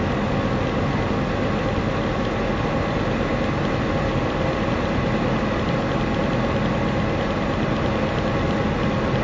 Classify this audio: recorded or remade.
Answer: recorded